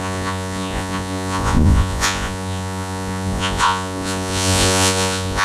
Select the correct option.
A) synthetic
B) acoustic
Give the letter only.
A